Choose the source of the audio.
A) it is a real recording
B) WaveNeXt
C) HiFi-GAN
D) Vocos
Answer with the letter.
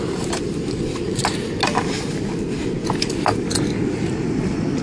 A